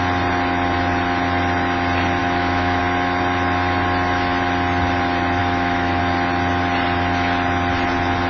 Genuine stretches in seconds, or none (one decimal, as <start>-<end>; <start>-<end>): 0.0-2.2; 2.8-5.4; 6.0-8.3